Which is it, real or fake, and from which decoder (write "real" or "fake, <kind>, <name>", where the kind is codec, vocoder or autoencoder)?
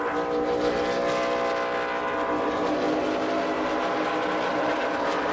real